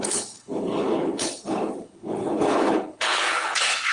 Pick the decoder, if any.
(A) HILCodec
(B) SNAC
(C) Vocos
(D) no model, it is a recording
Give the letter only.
A